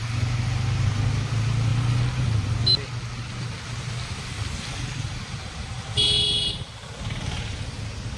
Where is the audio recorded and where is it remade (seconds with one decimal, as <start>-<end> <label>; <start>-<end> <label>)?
0.0-8.2 recorded

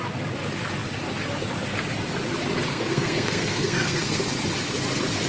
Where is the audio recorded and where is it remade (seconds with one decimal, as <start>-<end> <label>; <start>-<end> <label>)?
0.0-2.7 recorded; 2.7-4.2 remade; 4.2-5.3 recorded

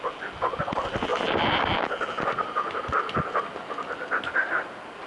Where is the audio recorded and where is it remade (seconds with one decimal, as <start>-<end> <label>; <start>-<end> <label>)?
0.0-5.1 recorded

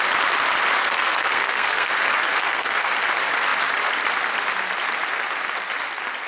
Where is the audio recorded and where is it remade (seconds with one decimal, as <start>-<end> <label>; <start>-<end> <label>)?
0.0-0.8 recorded; 0.8-1.9 remade; 1.9-2.4 recorded; 2.4-2.9 remade; 2.9-6.3 recorded